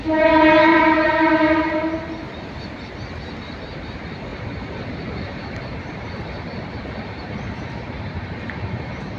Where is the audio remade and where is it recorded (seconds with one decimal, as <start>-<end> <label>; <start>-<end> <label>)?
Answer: 0.0-0.7 recorded; 0.7-2.9 remade; 2.9-4.3 recorded; 4.3-9.2 remade